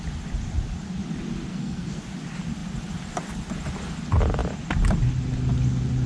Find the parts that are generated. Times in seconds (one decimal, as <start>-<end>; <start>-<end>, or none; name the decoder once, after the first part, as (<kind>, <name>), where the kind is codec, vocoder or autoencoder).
1.5-2.0 (codec, SNAC)